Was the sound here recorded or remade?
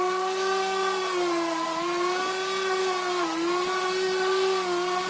recorded